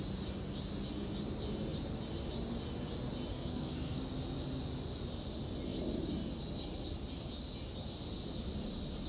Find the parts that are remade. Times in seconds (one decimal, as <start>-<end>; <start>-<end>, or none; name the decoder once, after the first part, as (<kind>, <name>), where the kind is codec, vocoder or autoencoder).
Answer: 3.3-4.0 (codec, SNAC)